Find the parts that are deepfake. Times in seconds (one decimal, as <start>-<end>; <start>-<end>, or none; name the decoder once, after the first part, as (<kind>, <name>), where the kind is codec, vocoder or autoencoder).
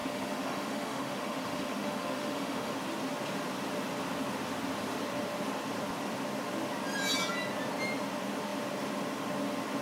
0.0-2.7 (autoencoder, DAC-VAE)